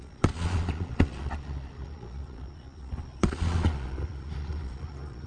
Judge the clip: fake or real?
fake